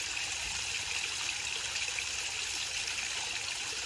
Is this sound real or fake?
real